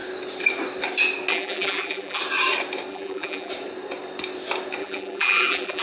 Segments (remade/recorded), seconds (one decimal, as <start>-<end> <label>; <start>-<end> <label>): 0.0-1.3 recorded; 1.3-2.2 remade; 2.2-2.9 recorded; 2.9-3.5 remade; 3.5-4.8 recorded; 4.8-5.8 remade